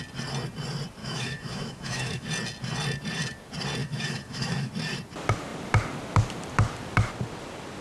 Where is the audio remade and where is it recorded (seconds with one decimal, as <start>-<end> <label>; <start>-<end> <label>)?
0.0-1.0 recorded; 1.0-2.3 remade; 2.3-3.8 recorded; 3.8-4.7 remade; 4.7-7.8 recorded